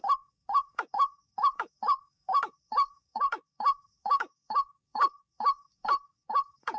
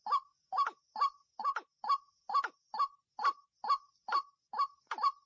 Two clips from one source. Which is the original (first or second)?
second